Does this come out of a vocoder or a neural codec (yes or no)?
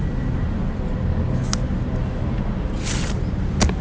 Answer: no